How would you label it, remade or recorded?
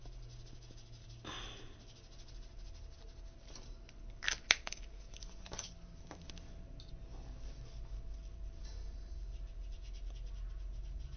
recorded